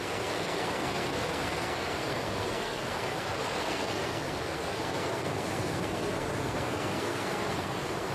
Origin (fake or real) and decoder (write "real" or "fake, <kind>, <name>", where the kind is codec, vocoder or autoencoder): fake, codec, SNAC